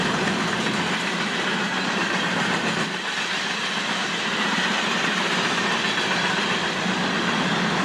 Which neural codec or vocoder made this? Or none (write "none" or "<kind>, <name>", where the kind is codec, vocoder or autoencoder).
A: vocoder, BigVGAN v2